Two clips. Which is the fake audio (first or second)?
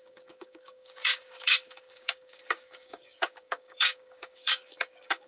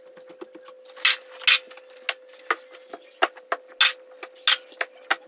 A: first